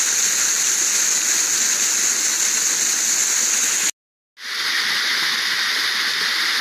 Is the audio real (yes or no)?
yes